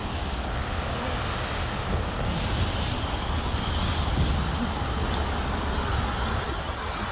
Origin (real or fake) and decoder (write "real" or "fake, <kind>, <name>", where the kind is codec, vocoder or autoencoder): real